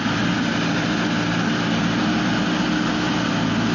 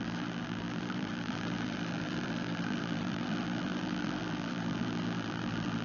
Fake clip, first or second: second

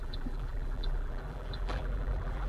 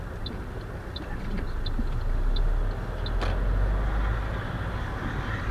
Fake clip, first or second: first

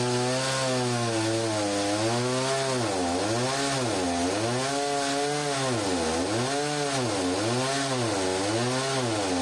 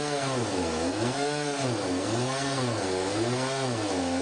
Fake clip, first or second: second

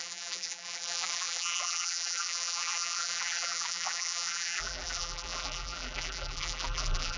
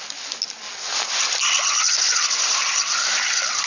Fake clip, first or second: first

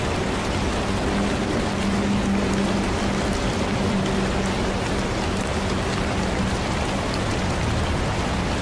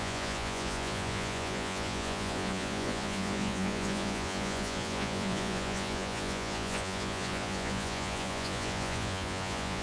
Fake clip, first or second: second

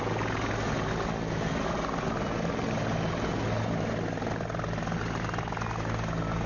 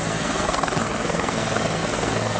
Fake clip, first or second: second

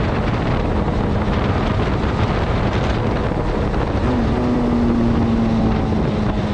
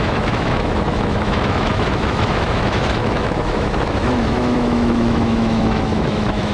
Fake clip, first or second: second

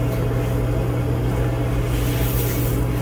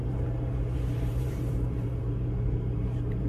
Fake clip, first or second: second